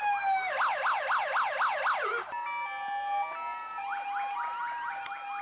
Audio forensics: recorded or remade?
recorded